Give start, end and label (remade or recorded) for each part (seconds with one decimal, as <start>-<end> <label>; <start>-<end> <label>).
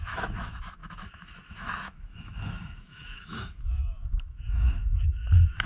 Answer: 0.0-5.7 remade